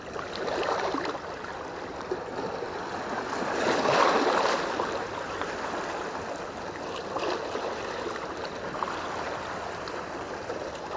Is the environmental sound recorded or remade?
recorded